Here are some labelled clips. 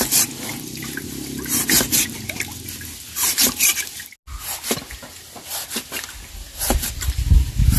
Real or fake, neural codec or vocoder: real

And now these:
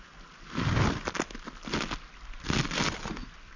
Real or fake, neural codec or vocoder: real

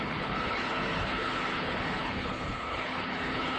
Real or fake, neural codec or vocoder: fake, codec, HILCodec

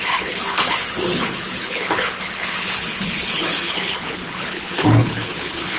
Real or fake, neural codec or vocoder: fake, codec, HILCodec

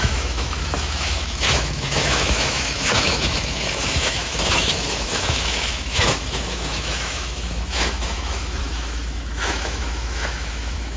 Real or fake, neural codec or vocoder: fake, autoencoder, DAC-VAE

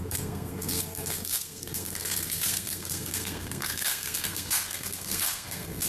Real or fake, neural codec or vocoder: fake, codec, SNAC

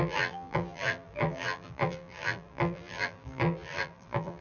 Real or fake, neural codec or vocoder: fake, vocoder, BigVGAN v2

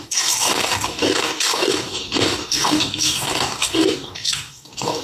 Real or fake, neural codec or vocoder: fake, codec, DAC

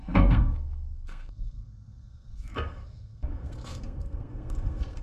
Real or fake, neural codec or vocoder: fake, codec, SNAC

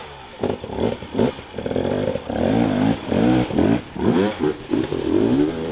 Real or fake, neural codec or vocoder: fake, vocoder, BigVGAN v2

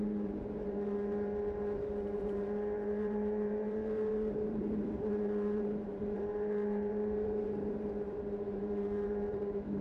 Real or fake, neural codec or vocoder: fake, vocoder, BigVGAN v2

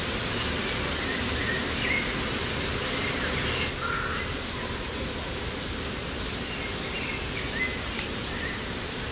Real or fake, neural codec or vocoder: real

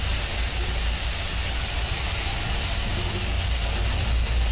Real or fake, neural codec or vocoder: real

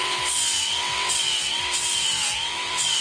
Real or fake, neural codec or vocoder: fake, vocoder, WaveNeXt